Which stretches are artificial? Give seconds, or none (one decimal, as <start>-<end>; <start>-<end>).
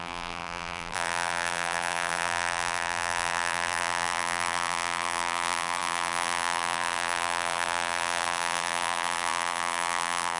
0.0-10.4